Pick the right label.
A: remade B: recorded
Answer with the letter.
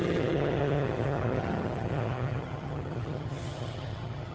A